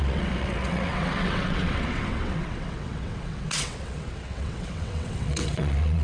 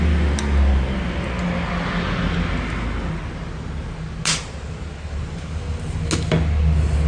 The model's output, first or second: first